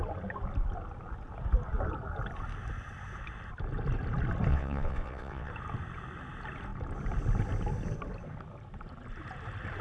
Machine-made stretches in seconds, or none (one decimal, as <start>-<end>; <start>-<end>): 4.5-5.5